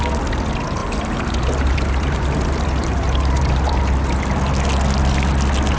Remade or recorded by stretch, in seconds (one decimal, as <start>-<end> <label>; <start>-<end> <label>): 0.0-0.8 recorded; 0.8-4.3 remade; 4.3-5.8 recorded

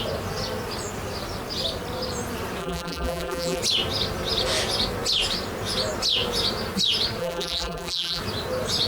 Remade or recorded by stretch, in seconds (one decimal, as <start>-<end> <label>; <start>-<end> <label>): 0.0-2.6 recorded; 2.6-3.6 remade; 3.6-7.2 recorded; 7.2-8.2 remade; 8.2-8.9 recorded

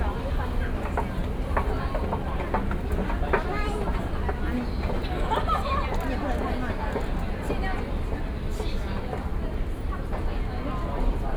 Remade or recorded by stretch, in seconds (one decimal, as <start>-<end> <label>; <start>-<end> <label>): 0.0-11.4 recorded

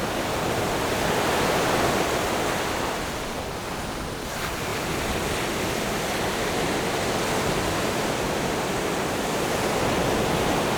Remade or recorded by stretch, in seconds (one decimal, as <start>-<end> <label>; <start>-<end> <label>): 0.0-10.8 recorded

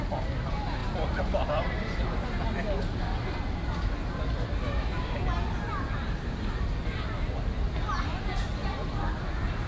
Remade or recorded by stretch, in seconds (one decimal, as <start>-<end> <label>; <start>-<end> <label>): 0.0-0.8 recorded; 0.8-2.0 remade; 2.0-9.7 recorded